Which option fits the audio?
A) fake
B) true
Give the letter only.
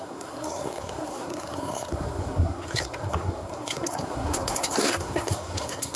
A